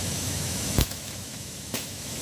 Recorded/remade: remade